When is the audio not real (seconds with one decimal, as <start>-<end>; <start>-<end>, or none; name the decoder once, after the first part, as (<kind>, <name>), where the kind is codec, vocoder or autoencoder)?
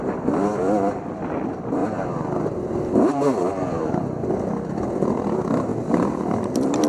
1.8-4.4 (vocoder, BigVGAN v2); 5.7-6.2